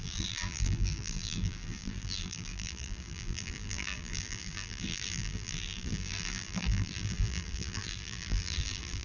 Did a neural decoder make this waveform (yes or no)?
yes